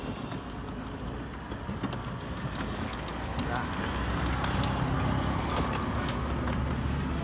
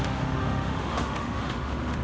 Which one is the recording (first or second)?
first